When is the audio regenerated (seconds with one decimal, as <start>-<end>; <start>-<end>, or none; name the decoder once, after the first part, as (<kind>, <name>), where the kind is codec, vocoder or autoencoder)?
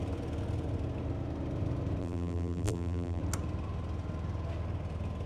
2.0-3.2 (vocoder, BigVGAN v2)